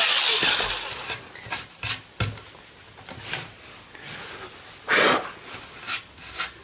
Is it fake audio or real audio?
real